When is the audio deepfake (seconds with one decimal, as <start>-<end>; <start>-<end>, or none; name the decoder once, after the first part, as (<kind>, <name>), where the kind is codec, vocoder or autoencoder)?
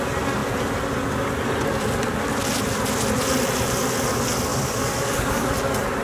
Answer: 4.5-5.5 (codec, DAC)